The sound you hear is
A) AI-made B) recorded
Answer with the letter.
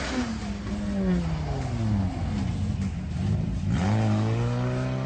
B